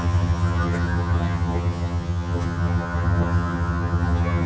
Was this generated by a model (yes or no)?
yes